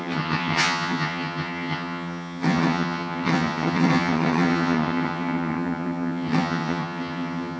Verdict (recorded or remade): remade